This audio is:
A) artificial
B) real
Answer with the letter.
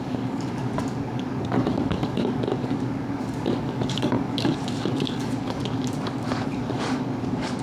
A